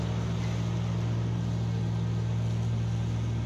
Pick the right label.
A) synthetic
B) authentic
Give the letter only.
B